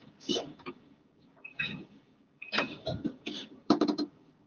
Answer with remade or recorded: remade